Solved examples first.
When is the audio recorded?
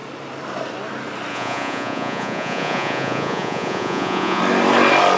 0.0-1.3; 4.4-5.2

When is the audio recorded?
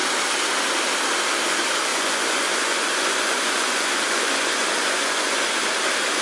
0.0-1.9; 5.6-6.2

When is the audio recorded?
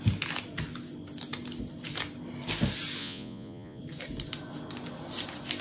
0.0-3.0; 3.8-5.6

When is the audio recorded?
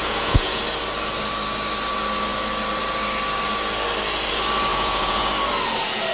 0.6-4.7; 5.3-6.1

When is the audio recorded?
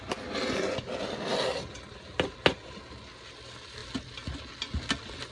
0.0-5.3